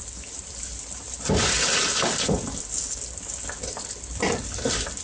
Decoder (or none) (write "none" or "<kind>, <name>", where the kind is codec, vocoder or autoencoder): none